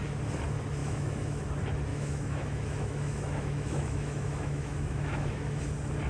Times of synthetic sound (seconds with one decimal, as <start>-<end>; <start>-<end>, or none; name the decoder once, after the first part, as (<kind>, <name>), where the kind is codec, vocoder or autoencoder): 0.8-1.4 (autoencoder, DAC-VAE); 1.9-5.6